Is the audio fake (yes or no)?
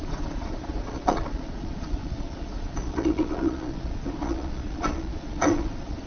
yes